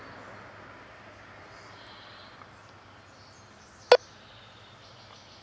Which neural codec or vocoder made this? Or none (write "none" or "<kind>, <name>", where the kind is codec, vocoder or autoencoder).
none